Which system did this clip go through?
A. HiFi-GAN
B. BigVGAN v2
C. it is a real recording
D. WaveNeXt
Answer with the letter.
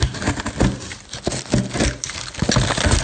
C